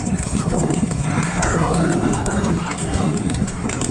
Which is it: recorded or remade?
remade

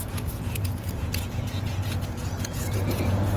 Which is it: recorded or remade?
remade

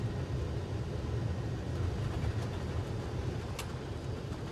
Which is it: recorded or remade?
recorded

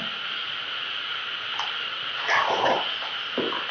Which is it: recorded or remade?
recorded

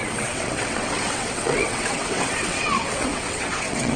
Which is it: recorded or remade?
remade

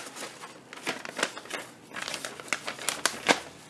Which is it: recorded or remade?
recorded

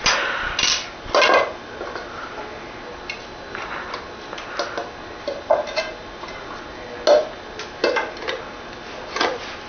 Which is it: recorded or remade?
recorded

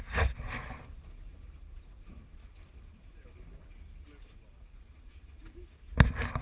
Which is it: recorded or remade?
recorded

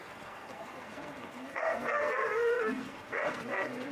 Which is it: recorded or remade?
remade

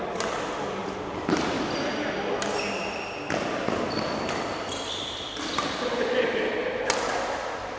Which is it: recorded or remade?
recorded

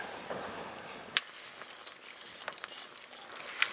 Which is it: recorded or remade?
recorded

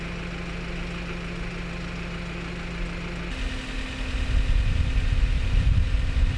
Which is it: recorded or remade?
recorded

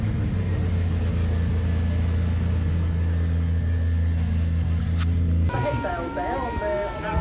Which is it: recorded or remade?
recorded